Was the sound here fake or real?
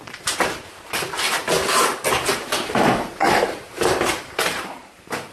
fake